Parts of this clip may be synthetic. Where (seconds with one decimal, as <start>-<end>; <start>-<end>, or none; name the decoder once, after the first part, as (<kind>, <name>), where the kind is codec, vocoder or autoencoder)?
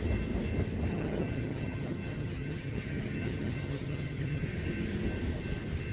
0.9-4.4 (vocoder, HiFi-GAN)